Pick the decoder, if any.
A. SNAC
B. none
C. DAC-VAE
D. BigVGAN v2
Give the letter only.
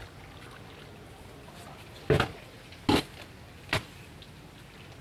B